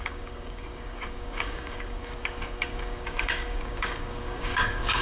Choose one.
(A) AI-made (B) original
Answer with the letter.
A